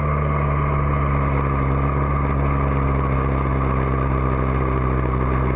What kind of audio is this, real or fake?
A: real